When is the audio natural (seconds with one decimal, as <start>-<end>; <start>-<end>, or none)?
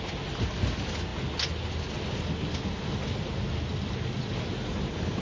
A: 0.0-5.2